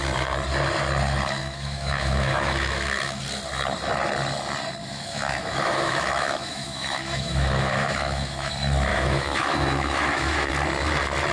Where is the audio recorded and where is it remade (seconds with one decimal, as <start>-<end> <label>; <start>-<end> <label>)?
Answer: 0.0-1.4 recorded; 1.4-3.2 remade; 3.2-4.8 recorded; 4.8-8.5 remade; 8.5-8.9 recorded; 8.9-10.5 remade; 10.5-11.3 recorded